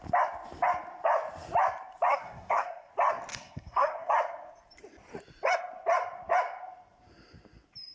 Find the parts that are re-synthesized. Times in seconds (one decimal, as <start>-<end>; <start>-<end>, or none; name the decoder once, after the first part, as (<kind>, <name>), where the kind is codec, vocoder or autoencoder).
2.1-2.9 (codec, SNAC); 3.3-4.1